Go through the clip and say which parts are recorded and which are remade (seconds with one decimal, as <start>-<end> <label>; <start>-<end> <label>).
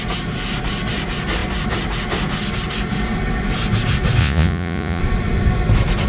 0.0-4.2 recorded; 4.2-5.0 remade; 5.0-6.1 recorded